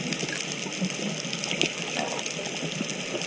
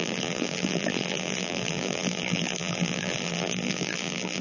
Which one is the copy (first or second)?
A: second